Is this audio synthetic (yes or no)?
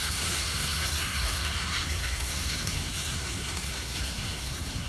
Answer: yes